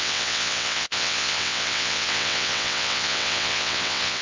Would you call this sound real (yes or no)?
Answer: no